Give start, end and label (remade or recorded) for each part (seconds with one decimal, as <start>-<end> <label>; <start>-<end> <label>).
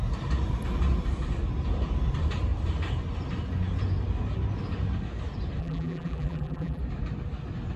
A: 0.0-5.6 recorded; 5.6-6.8 remade; 6.8-7.8 recorded